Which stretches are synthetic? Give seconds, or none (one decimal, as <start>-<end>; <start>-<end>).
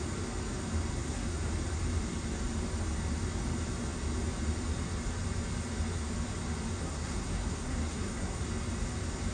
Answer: 0.9-1.5; 6.8-8.4